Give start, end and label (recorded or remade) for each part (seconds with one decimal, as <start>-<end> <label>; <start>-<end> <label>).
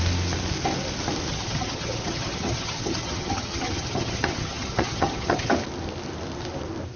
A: 0.0-1.3 recorded; 1.3-5.5 remade; 5.5-7.0 recorded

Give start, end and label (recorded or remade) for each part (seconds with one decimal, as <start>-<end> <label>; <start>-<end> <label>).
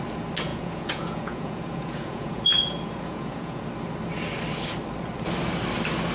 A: 0.0-0.5 recorded; 0.5-3.7 remade; 3.7-6.1 recorded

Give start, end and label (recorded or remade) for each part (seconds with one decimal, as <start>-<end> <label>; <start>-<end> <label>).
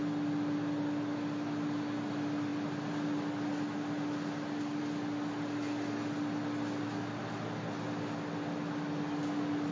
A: 0.0-9.7 recorded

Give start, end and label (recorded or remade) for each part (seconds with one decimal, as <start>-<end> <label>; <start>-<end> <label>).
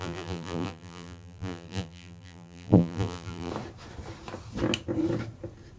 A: 0.0-3.5 remade; 3.5-5.8 recorded